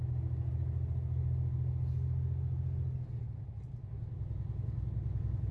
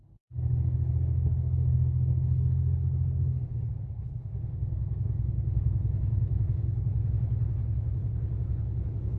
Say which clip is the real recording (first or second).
first